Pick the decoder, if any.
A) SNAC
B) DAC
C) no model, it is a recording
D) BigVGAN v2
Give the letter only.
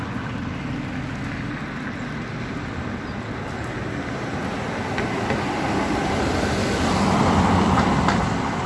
C